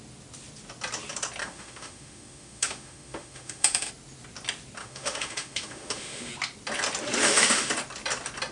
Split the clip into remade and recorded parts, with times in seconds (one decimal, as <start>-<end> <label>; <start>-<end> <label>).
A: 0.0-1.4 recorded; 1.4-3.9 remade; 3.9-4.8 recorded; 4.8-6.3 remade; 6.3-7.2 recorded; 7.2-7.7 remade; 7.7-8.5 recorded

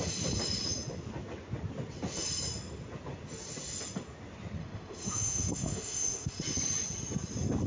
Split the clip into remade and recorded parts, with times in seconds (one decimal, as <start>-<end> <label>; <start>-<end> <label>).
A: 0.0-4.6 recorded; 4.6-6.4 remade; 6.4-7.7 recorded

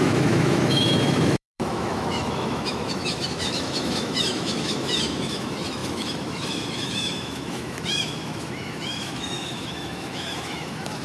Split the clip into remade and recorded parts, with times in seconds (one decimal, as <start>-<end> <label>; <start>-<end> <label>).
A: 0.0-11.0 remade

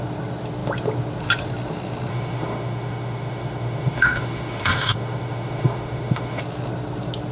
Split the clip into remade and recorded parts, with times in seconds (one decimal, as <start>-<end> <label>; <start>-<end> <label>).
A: 0.0-2.1 recorded; 2.1-6.4 remade; 6.4-7.3 recorded

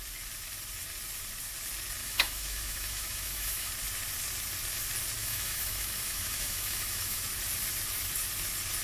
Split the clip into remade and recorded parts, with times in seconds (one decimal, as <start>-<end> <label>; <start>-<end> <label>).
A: 0.0-2.0 recorded; 2.0-3.7 remade; 3.7-5.2 recorded; 5.2-7.2 remade; 7.2-8.8 recorded